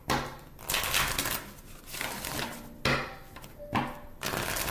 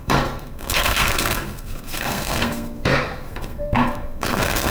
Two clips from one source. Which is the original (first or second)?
first